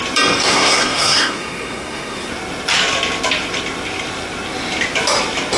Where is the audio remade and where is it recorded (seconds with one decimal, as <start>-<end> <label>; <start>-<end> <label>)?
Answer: 0.0-0.5 recorded; 0.5-2.3 remade; 2.3-5.6 recorded